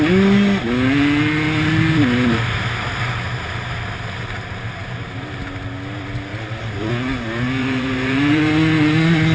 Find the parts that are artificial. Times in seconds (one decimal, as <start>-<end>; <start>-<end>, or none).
4.8-5.3; 6.3-6.9; 7.6-8.5